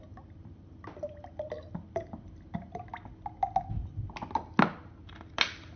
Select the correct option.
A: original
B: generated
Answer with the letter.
A